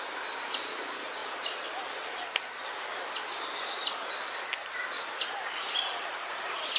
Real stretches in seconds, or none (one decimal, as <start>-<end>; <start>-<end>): 0.0-6.8